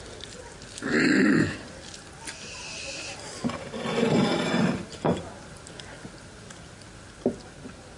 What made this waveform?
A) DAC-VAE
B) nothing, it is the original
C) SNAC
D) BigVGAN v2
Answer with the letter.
B